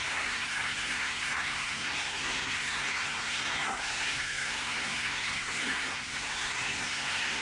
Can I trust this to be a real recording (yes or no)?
no